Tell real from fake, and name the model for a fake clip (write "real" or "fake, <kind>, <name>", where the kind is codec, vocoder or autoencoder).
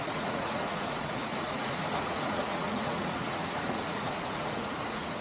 fake, vocoder, Vocos